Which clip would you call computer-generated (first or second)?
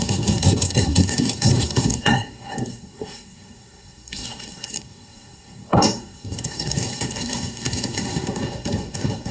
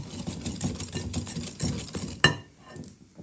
first